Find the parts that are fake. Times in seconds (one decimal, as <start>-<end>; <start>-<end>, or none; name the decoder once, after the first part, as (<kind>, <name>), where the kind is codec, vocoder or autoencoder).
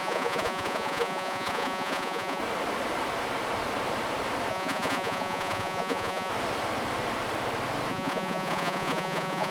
0.0-2.4 (vocoder, Vocos); 4.5-6.3; 7.9-9.5